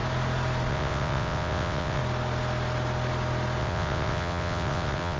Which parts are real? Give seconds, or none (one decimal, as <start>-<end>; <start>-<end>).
0.0-0.7; 2.0-3.6